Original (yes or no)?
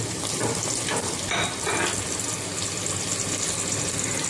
yes